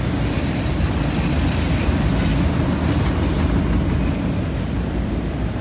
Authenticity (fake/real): real